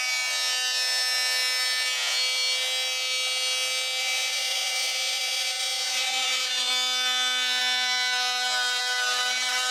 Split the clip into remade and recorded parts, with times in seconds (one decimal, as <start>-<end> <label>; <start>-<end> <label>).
0.0-4.0 recorded; 4.0-6.7 remade; 6.7-9.7 recorded